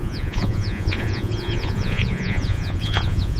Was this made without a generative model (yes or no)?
no